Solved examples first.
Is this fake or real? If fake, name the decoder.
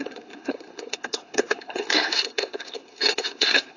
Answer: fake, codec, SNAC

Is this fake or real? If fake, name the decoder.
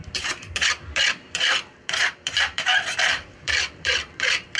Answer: fake, vocoder, BigVGAN v2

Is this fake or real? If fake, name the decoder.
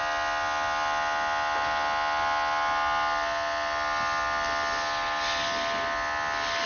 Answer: real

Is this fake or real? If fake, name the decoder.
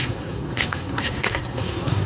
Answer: fake, codec, SNAC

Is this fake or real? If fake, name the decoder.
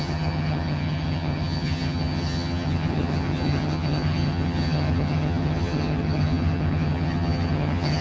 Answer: fake, vocoder, HiFi-GAN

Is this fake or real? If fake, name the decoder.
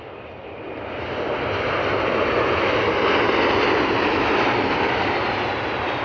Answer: real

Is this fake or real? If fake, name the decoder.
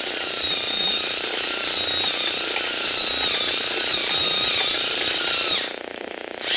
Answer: real